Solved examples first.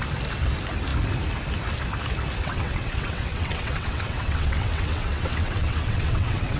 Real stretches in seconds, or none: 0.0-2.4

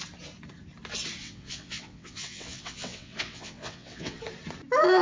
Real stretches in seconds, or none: 0.0-1.2; 4.2-5.0